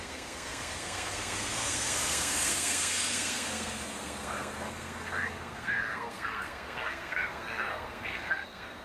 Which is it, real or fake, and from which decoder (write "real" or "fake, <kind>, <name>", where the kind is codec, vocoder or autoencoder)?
fake, codec, SNAC